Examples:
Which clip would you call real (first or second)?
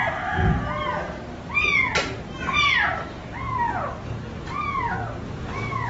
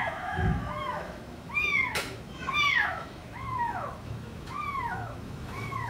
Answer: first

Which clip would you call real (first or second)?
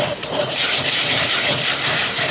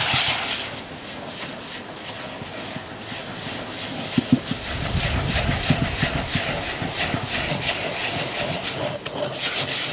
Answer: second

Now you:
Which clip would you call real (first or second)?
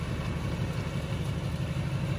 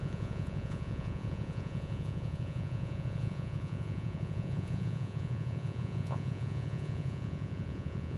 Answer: first